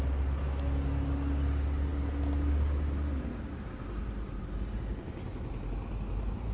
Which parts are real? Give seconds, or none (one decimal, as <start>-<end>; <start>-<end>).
0.0-6.5